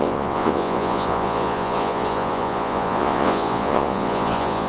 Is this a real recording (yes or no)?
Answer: no